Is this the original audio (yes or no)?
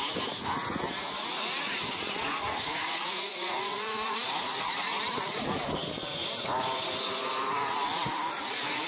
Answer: no